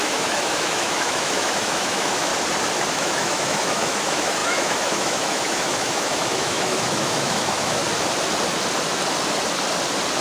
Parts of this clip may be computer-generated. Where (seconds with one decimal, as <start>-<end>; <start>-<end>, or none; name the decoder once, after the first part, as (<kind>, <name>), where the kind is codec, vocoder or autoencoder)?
0.0-2.3 (autoencoder, DAC-VAE); 2.9-7.8

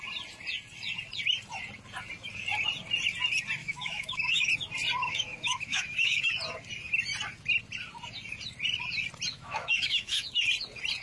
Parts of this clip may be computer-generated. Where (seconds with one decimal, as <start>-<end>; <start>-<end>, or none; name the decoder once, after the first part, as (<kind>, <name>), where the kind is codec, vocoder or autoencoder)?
3.6-4.5 (autoencoder, DAC-VAE); 5.0-6.3; 9.3-10.4